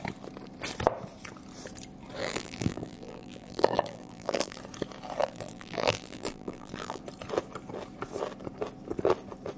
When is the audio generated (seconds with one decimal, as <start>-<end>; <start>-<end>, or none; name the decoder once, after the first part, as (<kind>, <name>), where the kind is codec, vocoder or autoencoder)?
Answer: 2.2-4.6 (vocoder, BigVGAN v2); 5.2-7.0